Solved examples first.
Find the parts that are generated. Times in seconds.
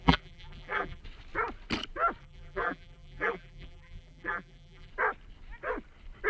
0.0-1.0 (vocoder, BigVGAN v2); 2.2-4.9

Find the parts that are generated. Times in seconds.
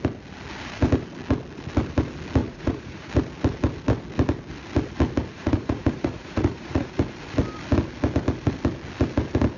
2.4-3.1 (vocoder, Vocos); 5.3-6.9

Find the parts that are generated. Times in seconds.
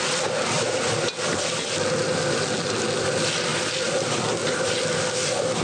none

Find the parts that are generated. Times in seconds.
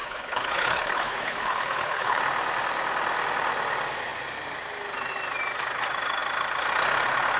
0.0-2.2 (codec, HILCodec)